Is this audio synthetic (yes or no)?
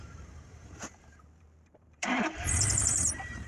yes